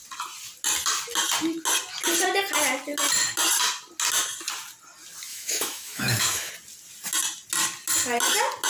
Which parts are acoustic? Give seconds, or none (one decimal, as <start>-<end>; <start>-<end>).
0.0-5.3; 6.5-8.7

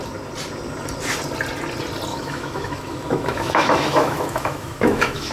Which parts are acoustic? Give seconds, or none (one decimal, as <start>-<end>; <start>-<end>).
0.0-2.1